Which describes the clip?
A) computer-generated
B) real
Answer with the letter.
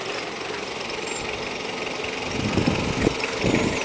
B